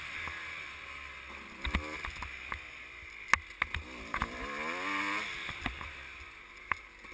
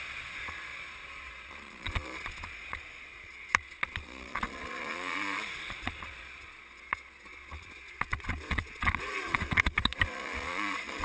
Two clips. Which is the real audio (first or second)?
first